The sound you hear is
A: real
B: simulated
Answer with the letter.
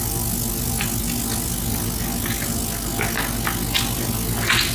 A